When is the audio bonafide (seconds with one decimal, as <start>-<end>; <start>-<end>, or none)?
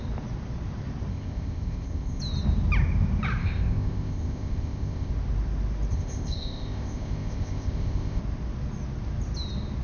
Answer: 0.0-1.1; 2.2-3.4; 5.1-5.9; 8.2-9.8